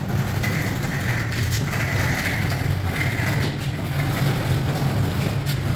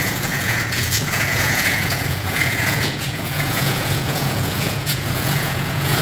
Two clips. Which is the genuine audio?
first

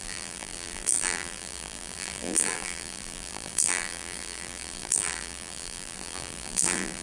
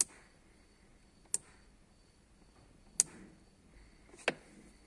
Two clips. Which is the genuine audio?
second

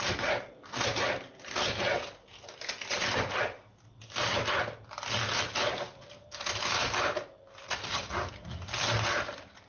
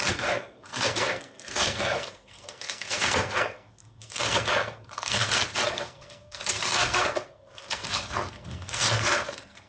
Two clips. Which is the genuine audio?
first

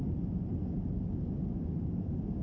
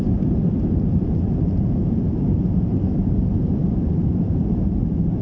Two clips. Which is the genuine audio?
first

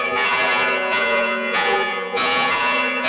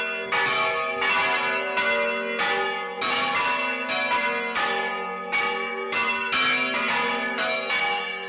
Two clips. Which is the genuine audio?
second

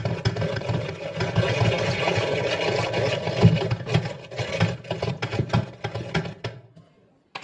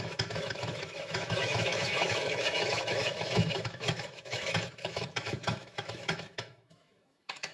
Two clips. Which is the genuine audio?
first